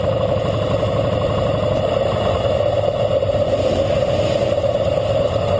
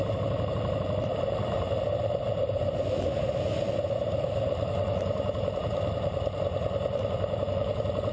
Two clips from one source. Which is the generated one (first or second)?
second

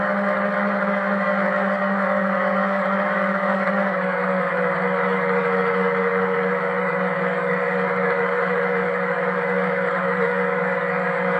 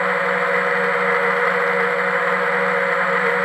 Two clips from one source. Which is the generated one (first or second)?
first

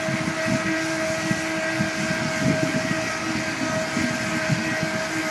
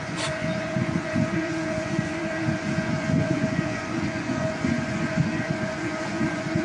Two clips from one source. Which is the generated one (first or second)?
second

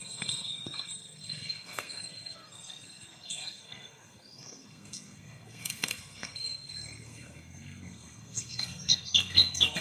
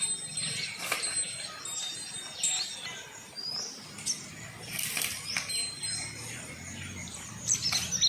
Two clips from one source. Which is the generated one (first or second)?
first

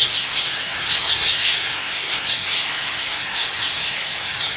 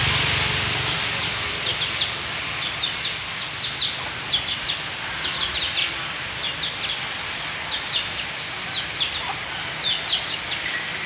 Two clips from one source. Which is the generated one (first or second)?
first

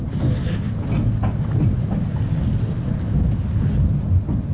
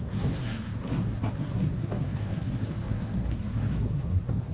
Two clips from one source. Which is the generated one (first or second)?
second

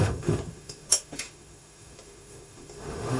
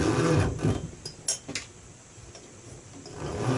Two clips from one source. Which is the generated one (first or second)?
first